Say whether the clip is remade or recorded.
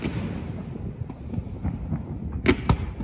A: recorded